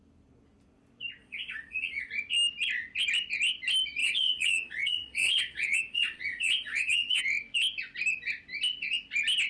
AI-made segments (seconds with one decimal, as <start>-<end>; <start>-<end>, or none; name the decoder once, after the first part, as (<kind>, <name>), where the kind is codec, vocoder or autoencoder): 1.2-2.1 (vocoder, Vocos); 4.0-7.2